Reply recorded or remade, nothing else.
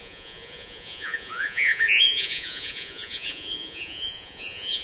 remade